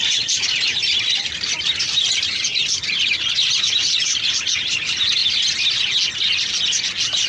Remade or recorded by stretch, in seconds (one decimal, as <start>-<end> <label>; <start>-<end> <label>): 0.0-7.3 recorded